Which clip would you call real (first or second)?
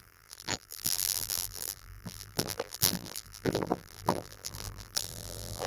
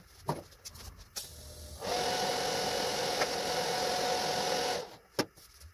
second